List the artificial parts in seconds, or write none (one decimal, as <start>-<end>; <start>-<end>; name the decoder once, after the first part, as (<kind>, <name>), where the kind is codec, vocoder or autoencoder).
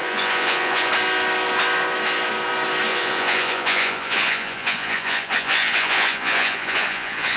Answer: 0.0-0.9 (vocoder, Vocos); 2.9-7.4